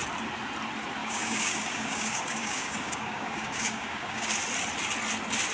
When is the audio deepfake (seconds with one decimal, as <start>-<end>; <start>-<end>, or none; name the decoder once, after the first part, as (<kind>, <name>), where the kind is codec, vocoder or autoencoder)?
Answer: 1.0-4.3 (codec, DAC)